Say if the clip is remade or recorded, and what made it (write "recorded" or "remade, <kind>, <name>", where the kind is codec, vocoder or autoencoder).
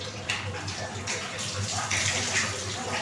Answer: recorded